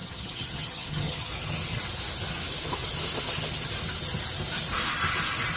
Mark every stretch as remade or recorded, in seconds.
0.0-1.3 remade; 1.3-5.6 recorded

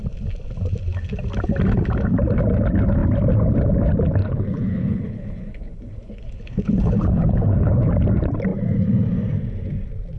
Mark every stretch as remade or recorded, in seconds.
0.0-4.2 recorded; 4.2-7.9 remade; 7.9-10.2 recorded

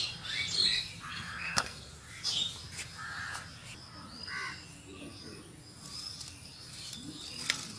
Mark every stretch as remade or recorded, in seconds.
0.0-1.1 recorded; 1.1-1.9 remade; 1.9-7.8 recorded